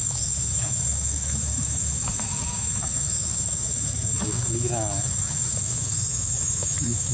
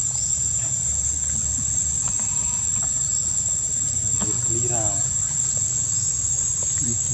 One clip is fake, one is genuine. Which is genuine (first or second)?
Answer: second